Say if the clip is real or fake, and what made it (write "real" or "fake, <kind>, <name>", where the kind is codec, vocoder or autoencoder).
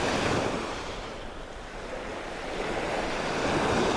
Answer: fake, vocoder, BigVGAN v2